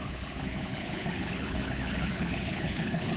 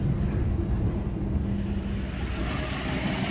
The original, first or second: second